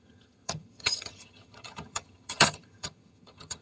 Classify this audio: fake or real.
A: fake